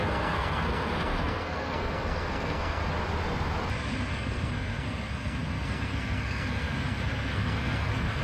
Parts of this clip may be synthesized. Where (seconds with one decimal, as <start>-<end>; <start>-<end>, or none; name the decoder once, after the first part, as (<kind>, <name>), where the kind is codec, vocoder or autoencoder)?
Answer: 0.0-2.8 (codec, SNAC); 4.1-8.2